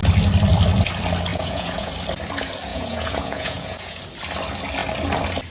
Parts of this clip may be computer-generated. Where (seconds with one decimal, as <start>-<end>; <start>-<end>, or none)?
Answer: 1.3-1.9; 2.7-4.0